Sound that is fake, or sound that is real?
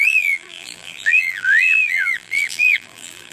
fake